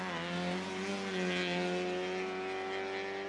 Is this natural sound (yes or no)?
yes